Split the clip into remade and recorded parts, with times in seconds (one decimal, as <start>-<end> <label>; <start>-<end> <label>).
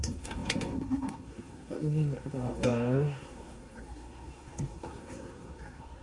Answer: 0.0-6.0 remade